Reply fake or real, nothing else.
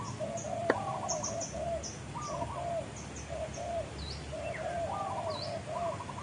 real